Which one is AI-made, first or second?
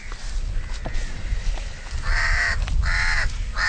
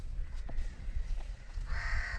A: second